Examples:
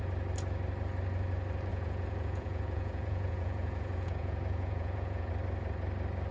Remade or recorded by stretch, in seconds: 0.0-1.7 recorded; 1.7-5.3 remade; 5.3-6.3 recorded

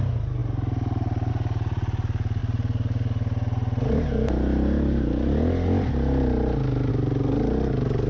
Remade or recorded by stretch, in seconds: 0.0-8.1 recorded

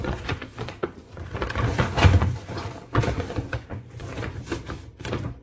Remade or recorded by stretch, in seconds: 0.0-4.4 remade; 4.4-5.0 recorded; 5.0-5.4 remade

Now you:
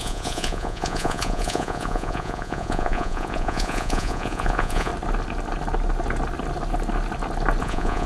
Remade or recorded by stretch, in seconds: 0.0-4.9 remade; 4.9-7.6 recorded; 7.6-8.1 remade